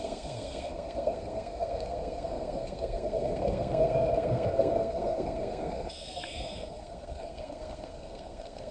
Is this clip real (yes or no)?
no